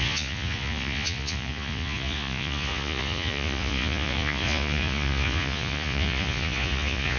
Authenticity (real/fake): fake